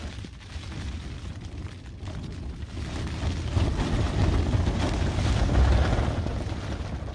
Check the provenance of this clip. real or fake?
real